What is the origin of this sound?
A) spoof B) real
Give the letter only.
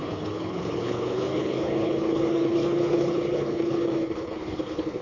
A